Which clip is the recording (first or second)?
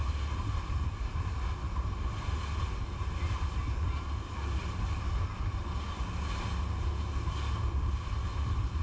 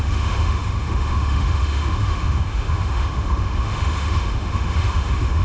first